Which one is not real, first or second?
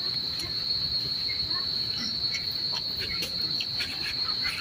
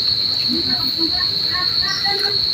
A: first